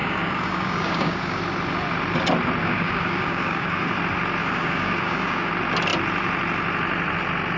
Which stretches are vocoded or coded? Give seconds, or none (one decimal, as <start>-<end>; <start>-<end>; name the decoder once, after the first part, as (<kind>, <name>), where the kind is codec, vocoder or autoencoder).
0.0-1.4 (codec, DAC); 2.6-4.0; 4.4-5.5